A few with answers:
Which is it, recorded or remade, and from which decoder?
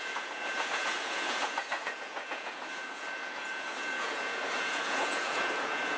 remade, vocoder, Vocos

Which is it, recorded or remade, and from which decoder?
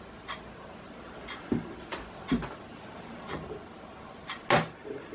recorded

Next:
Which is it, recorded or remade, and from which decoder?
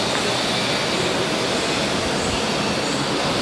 recorded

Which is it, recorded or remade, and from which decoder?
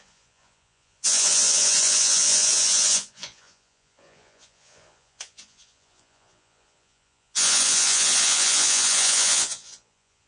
remade, vocoder, Vocos